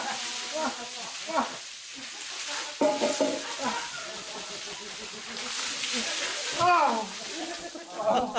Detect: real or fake real